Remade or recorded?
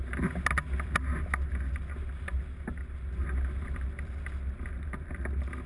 recorded